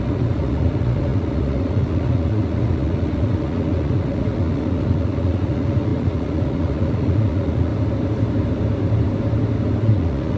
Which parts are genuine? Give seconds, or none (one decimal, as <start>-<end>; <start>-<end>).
7.7-9.8